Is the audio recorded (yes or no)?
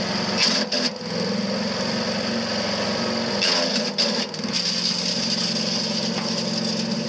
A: yes